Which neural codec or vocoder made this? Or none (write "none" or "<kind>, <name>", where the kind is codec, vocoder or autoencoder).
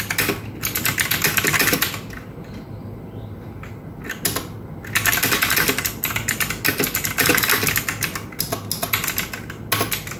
none